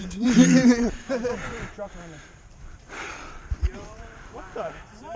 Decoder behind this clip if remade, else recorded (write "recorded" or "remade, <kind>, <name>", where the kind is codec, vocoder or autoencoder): remade, vocoder, BigVGAN v2